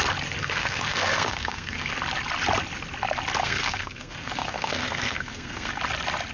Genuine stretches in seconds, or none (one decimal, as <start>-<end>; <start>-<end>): 0.0-0.4; 1.9-3.4; 5.7-6.3